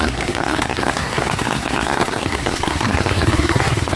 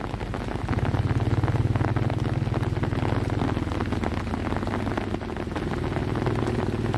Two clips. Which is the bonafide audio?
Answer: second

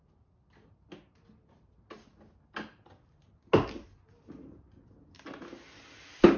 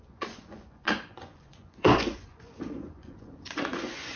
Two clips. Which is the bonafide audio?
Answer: first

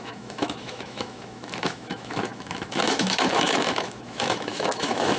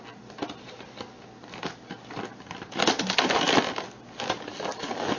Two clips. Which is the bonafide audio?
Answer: second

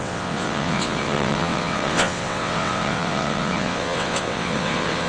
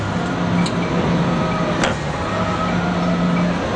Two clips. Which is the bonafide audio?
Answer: second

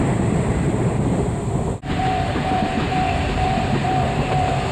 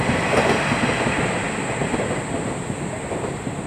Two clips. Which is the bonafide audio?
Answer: second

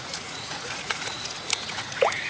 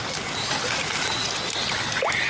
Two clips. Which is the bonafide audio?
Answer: second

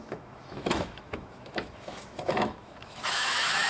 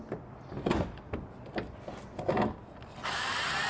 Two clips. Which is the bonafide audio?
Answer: second